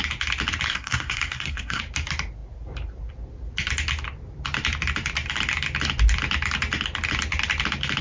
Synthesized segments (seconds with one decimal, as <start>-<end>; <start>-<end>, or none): 0.7-1.8